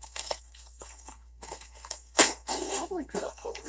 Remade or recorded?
remade